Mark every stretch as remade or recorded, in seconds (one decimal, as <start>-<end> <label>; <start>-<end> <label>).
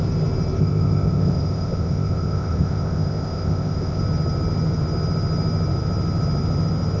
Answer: 0.0-0.6 recorded; 0.6-4.0 remade; 4.0-7.0 recorded